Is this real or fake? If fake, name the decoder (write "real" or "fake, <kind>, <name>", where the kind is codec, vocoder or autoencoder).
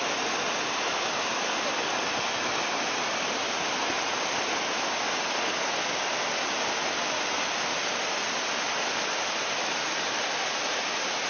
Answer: real